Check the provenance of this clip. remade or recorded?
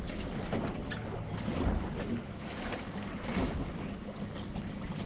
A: recorded